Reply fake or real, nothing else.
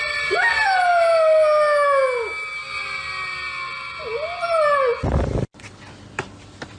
real